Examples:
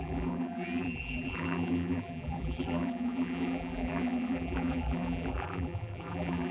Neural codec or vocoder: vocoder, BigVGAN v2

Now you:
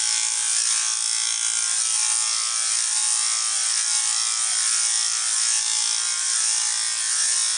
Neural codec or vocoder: none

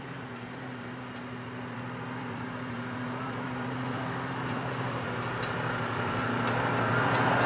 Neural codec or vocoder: vocoder, BigVGAN v2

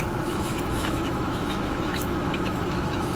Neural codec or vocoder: autoencoder, DAC-VAE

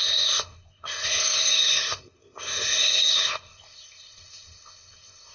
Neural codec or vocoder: codec, ZipCodec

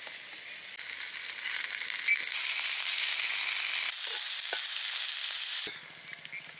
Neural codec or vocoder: none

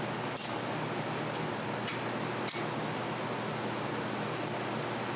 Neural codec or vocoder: none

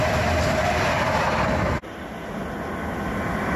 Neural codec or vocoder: none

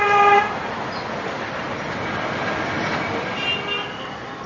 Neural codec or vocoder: none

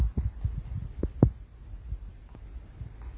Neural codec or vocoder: none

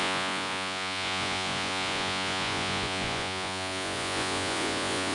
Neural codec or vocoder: vocoder, Vocos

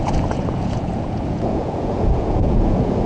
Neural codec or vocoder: vocoder, Vocos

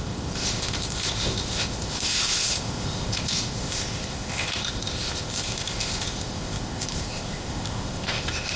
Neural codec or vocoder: codec, ZipCodec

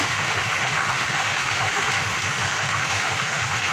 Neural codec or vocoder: autoencoder, DAC-VAE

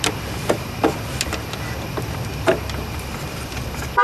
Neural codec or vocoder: none